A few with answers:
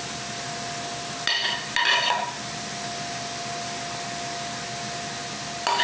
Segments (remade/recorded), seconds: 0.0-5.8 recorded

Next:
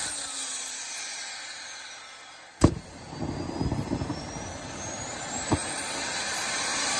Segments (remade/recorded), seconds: 0.0-4.2 recorded; 4.2-7.0 remade

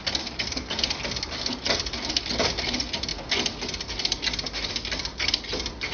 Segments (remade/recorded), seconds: 0.0-5.9 recorded

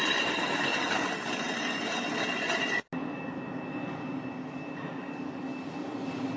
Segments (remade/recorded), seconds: 0.0-0.7 remade; 0.7-4.5 recorded; 4.5-5.5 remade; 5.5-6.4 recorded